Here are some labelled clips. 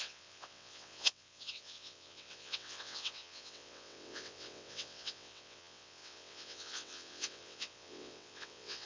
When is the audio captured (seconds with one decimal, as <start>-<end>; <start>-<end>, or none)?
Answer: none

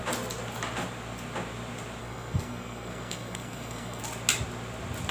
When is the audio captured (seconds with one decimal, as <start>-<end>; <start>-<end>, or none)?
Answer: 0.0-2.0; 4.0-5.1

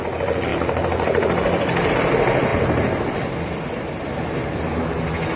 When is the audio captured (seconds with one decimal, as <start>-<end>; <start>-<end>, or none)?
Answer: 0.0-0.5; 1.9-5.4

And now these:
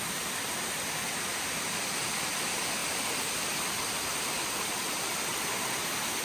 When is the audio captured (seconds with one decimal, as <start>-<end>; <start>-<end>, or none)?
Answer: 0.0-6.2